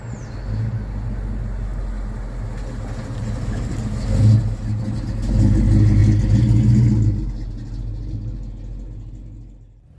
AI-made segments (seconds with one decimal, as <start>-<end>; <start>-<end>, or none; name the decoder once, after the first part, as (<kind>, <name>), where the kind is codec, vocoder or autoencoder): none